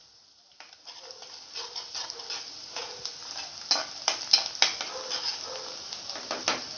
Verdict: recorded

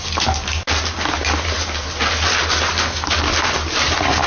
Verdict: recorded